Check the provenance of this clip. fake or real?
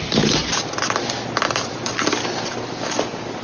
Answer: real